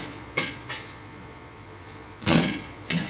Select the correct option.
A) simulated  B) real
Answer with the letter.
A